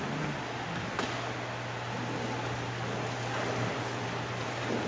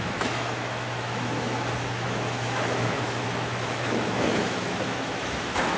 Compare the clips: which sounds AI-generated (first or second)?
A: second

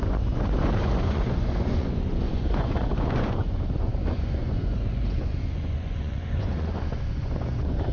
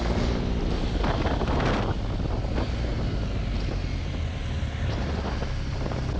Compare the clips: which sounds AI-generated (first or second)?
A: first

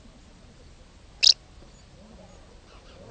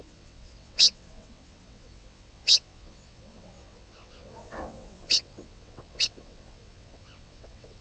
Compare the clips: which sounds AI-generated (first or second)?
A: second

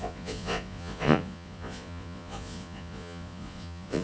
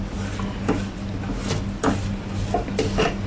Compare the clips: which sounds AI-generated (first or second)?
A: first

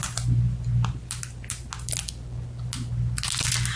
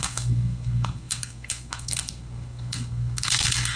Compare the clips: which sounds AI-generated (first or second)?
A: second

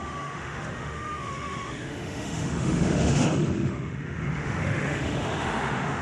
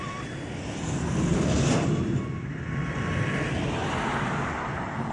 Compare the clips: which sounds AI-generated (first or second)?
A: first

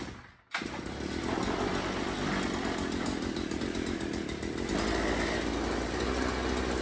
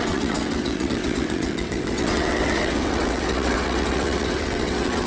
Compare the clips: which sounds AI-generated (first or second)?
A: second